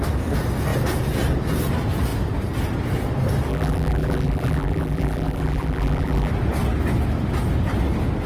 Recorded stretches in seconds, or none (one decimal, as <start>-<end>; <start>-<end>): 0.0-3.5; 6.3-8.3